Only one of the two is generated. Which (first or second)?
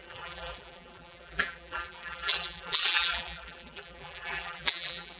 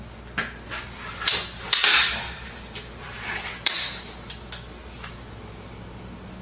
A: first